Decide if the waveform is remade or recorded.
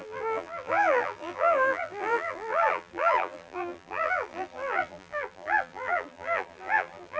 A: remade